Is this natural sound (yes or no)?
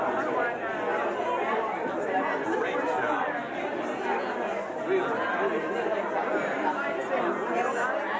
yes